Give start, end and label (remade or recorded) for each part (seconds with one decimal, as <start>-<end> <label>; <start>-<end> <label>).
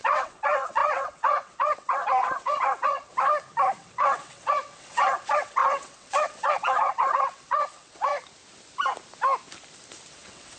0.0-3.1 remade; 3.1-3.8 recorded; 3.8-8.1 remade; 8.1-10.1 recorded; 10.1-10.6 remade